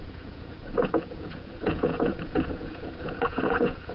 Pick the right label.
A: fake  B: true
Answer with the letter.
A